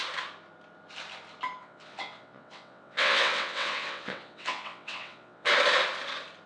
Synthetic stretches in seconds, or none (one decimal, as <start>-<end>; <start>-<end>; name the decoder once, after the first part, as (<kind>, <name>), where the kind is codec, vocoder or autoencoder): 1.6-5.5 (vocoder, WaveNeXt)